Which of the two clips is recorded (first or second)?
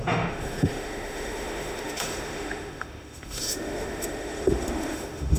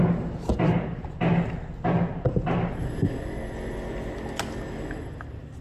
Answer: second